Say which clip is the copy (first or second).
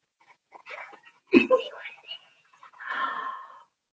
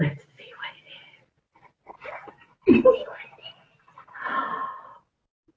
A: first